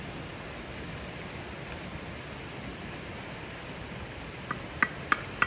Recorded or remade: recorded